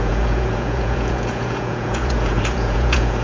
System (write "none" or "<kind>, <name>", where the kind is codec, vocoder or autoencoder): vocoder, Vocos